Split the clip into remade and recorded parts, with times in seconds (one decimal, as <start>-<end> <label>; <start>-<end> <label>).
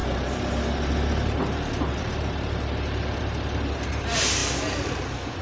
0.0-5.4 recorded